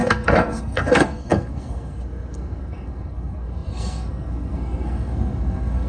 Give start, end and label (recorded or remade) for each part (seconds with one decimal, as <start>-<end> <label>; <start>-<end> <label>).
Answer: 0.0-5.9 remade